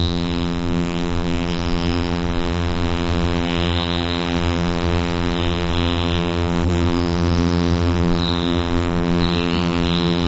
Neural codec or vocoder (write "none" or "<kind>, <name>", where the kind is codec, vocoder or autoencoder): vocoder, BigVGAN v2